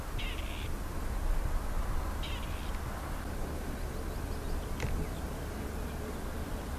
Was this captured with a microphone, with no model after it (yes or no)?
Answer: yes